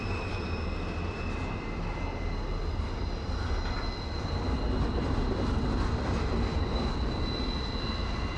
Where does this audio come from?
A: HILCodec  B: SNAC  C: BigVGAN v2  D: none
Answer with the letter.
D